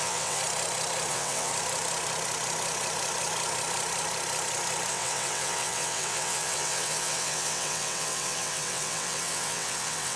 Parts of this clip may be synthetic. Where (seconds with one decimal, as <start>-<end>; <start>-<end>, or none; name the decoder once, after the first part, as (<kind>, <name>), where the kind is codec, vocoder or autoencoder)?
0.0-0.4 (vocoder, WaveNeXt); 1.1-1.5; 4.9-10.2